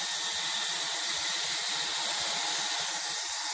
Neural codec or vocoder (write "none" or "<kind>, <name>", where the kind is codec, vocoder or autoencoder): none